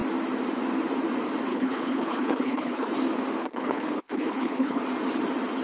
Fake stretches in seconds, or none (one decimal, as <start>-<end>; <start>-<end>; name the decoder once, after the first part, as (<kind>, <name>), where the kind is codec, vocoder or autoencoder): 1.5-2.9 (codec, HILCodec); 3.4-4.8